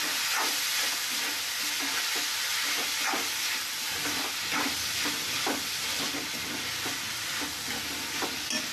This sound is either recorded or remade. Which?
recorded